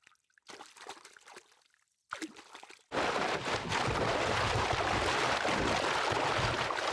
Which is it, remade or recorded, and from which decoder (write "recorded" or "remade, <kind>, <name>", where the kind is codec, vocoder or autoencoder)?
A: recorded